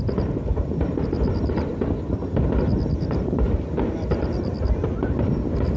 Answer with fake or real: real